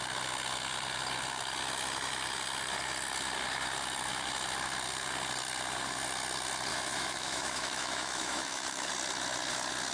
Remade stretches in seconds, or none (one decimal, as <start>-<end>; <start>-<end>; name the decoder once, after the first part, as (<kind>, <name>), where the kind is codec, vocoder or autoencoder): 6.7-8.9 (autoencoder, DAC-VAE)